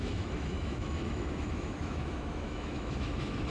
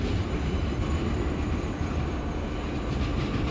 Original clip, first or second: second